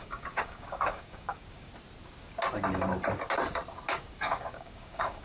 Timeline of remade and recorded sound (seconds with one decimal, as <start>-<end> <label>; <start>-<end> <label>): 0.0-1.7 remade; 1.7-3.9 recorded; 3.9-5.2 remade